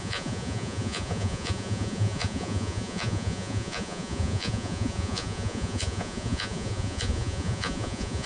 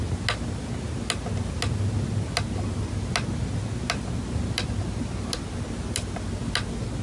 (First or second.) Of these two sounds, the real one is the second